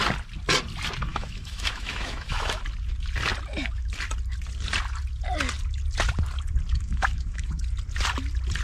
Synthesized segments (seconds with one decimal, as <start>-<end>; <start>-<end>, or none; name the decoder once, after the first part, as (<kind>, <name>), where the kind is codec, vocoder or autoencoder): 1.1-2.6 (autoencoder, DAC-VAE); 6.7-7.6